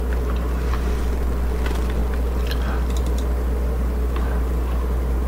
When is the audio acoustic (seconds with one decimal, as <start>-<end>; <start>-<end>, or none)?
0.0-5.3